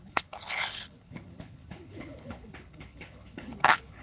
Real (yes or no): no